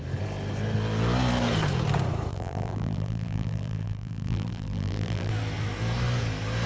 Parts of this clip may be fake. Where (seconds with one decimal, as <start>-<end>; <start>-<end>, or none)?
2.3-5.3

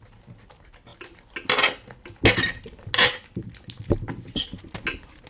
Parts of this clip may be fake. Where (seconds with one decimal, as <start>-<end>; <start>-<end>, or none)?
none